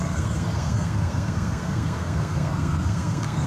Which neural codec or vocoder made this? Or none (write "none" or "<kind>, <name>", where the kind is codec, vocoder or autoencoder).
codec, SNAC